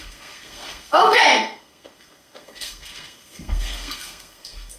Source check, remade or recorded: remade